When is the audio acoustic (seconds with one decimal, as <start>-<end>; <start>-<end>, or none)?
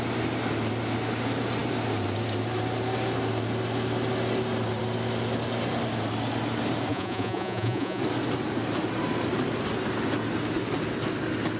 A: 0.0-6.9; 8.0-11.6